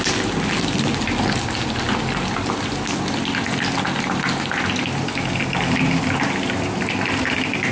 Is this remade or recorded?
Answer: recorded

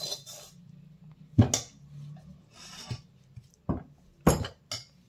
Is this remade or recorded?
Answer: recorded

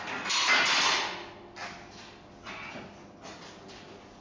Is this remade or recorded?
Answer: recorded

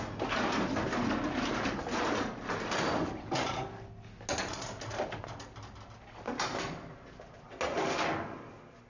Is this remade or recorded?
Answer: recorded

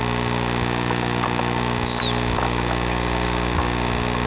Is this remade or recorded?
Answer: recorded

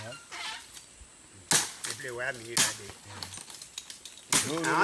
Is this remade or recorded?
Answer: recorded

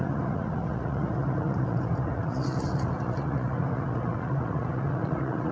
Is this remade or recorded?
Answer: remade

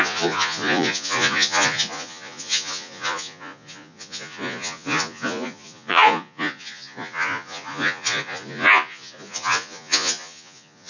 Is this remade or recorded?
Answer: remade